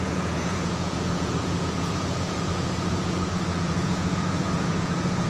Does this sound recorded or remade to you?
remade